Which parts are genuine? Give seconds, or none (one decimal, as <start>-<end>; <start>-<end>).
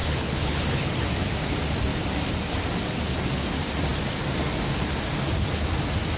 0.9-6.2